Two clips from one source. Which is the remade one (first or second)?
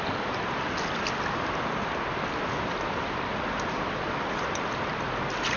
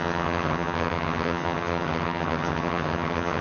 second